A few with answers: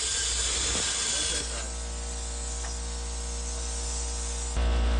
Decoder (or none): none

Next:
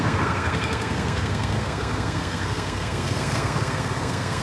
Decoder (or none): codec, SNAC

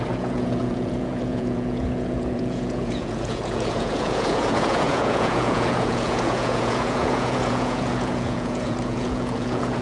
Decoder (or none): vocoder, Vocos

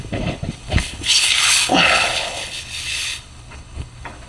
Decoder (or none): codec, HILCodec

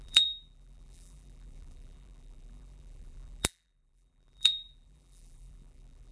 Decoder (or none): vocoder, BigVGAN v2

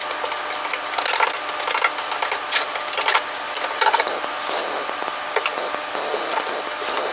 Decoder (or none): none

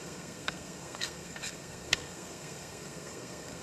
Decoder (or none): codec, SNAC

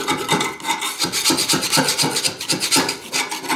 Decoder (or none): none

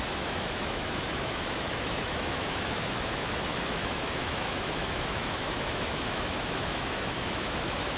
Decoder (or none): autoencoder, DAC-VAE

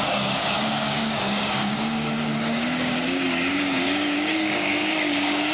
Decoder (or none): codec, DAC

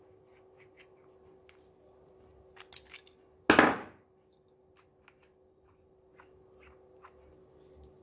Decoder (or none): none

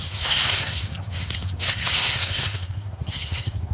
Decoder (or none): codec, SNAC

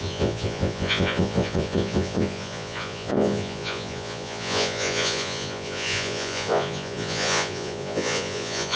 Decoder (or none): vocoder, Vocos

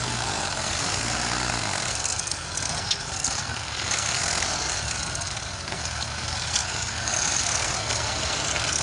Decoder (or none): codec, SNAC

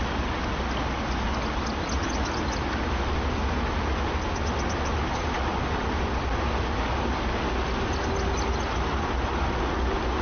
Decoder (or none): none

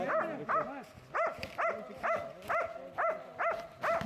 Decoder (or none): none